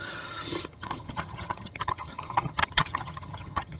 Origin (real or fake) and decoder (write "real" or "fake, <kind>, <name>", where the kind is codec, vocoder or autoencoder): fake, vocoder, HiFi-GAN